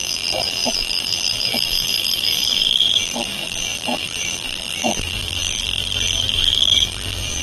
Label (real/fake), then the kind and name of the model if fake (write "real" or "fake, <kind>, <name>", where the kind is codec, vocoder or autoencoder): fake, vocoder, BigVGAN v2